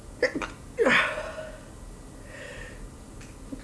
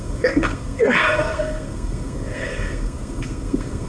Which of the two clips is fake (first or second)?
second